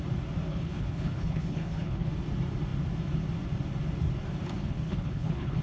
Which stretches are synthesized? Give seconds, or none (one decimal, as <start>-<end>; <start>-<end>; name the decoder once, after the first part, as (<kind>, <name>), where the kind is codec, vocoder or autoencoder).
0.5-2.1 (codec, HILCodec); 4.6-5.6